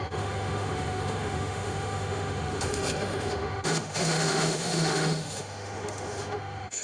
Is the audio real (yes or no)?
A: no